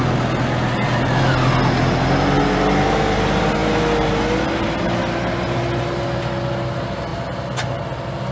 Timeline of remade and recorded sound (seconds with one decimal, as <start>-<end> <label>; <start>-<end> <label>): 0.0-8.3 recorded